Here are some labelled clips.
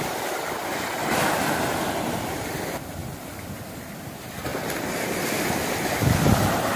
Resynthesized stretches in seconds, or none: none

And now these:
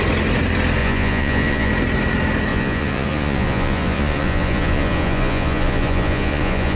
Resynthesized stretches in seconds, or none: 0.8-1.7 (vocoder, Vocos); 2.5-6.8

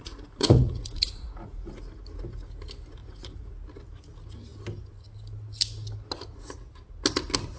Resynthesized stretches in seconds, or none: 0.0-1.7 (vocoder, Vocos); 3.0-3.5

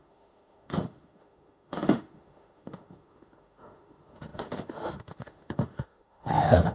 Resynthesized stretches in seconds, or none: 0.0-6.7 (autoencoder, DAC-VAE)

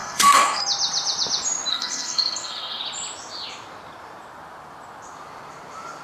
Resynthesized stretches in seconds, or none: 0.0-0.6 (codec, SNAC); 1.7-2.8

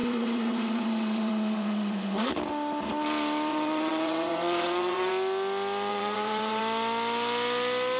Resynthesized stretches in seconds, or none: 0.0-2.3 (vocoder, WaveNeXt); 3.5-5.1; 5.9-6.6

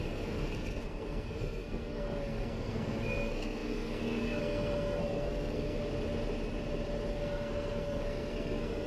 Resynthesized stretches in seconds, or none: 0.0-5.8 (codec, SNAC); 7.1-8.9

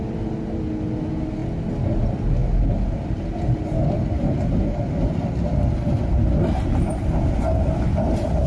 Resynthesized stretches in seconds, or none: none